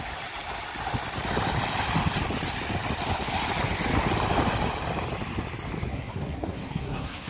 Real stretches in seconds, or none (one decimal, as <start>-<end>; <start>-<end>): 0.0-5.9